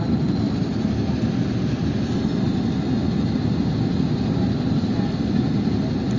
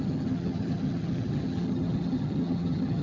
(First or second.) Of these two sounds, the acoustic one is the first